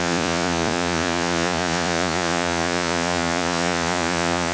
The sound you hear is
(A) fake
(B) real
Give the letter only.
A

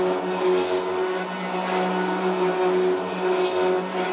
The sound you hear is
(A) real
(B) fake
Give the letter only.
A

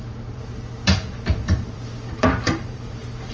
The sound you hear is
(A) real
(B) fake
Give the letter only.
B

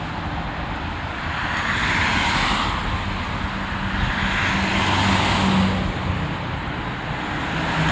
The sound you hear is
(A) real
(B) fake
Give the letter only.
A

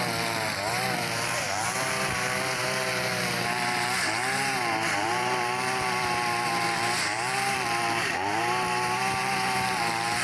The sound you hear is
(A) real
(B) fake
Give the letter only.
B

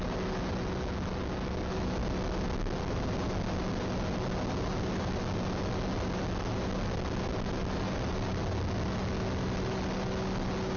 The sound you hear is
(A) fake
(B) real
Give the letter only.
B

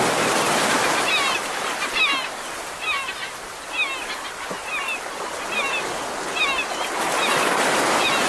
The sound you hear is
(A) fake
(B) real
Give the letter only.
B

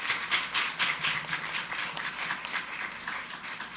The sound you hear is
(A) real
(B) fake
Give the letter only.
A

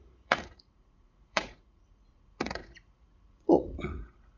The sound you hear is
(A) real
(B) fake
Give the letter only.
B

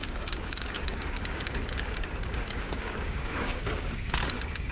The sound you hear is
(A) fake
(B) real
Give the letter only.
A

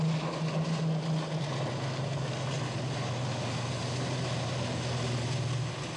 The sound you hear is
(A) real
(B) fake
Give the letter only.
A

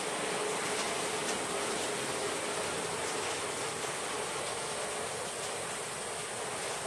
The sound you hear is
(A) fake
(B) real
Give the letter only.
B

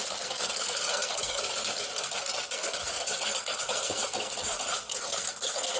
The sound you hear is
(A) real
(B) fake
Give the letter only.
B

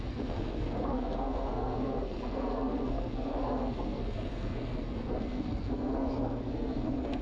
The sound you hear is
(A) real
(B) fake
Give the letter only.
B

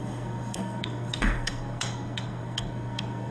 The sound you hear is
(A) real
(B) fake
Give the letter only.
B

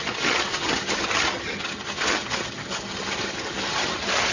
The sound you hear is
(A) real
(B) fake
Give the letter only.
B